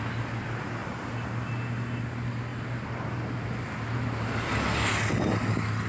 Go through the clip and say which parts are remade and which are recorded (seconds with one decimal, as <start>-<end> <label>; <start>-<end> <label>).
0.0-5.9 recorded